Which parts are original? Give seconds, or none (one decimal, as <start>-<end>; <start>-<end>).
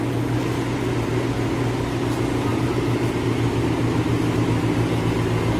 0.0-2.5; 3.1-5.6